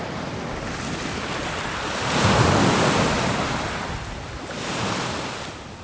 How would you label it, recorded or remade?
recorded